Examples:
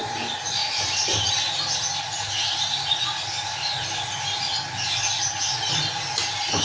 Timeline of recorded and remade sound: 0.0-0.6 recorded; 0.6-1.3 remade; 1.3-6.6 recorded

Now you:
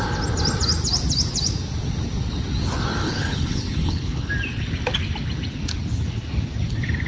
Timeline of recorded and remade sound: 0.0-3.0 recorded; 3.0-4.3 remade; 4.3-7.1 recorded